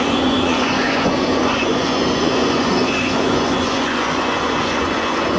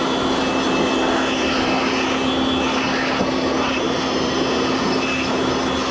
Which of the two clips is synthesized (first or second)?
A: first